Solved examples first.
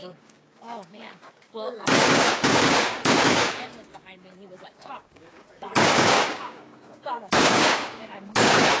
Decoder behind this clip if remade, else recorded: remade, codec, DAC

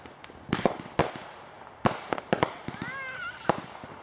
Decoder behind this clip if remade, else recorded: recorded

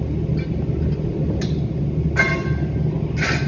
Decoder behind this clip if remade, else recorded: recorded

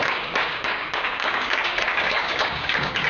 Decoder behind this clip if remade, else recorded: remade, codec, DAC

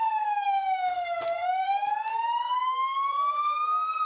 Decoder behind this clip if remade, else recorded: remade, codec, DAC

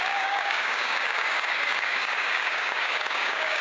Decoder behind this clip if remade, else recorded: remade, codec, DAC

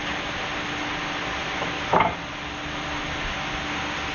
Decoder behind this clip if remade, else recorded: recorded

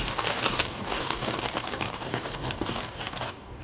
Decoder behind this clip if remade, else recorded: remade, codec, DAC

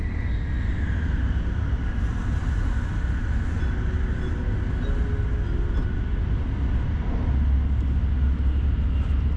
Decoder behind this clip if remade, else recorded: recorded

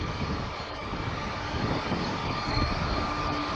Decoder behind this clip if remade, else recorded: remade, codec, DAC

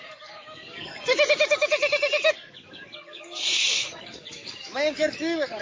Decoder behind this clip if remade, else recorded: remade, codec, DAC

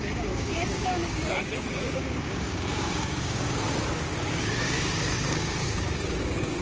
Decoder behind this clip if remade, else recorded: remade, codec, DAC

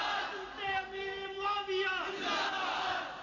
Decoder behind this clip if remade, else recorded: recorded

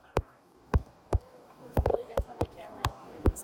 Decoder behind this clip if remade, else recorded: remade, codec, DAC